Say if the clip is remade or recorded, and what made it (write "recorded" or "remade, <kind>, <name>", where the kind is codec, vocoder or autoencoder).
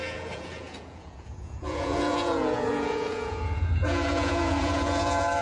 remade, vocoder, Vocos